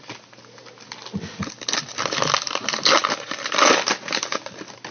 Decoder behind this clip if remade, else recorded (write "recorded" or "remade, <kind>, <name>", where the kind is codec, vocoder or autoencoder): recorded